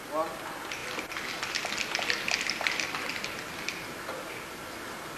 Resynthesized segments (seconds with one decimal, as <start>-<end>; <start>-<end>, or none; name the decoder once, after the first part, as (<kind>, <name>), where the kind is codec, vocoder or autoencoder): none